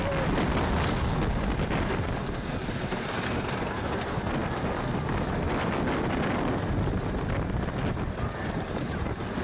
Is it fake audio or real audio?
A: real